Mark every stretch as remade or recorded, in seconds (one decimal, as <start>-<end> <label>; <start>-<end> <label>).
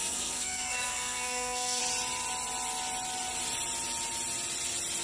0.0-1.8 remade; 1.8-5.0 recorded